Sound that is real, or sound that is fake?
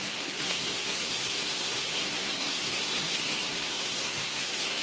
fake